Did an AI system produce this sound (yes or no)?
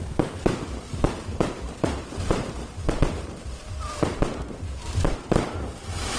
yes